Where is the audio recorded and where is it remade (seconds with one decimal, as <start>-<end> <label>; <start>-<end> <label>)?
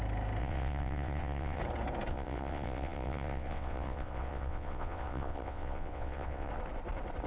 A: 0.0-0.4 recorded; 0.4-1.6 remade; 1.6-2.1 recorded; 2.1-6.5 remade; 6.5-7.3 recorded